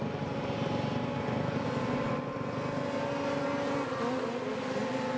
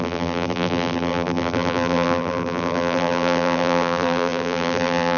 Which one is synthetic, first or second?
second